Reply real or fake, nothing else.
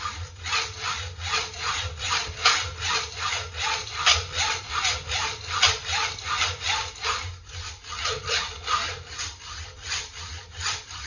real